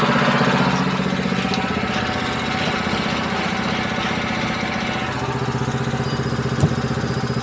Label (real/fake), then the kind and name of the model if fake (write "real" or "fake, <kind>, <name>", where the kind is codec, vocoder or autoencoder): real